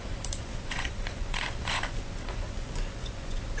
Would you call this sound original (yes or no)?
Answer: no